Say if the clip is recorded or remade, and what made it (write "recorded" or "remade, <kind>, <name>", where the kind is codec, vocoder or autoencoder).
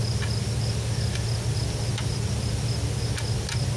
recorded